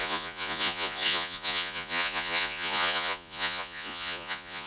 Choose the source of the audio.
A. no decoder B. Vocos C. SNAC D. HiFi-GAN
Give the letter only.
B